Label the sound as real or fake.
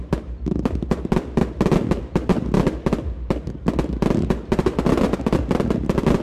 real